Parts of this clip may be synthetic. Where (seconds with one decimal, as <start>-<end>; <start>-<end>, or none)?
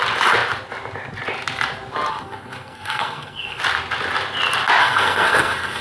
2.1-3.6; 4.8-5.8